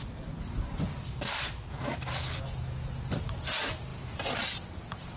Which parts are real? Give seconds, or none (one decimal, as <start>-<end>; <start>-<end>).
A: 0.0-0.9; 1.9-3.9; 4.5-5.2